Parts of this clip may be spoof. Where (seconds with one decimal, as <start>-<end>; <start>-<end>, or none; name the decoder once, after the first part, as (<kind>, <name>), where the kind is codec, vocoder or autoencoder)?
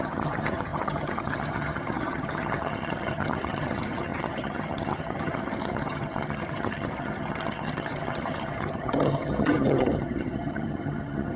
0.0-11.4 (vocoder, HiFi-GAN)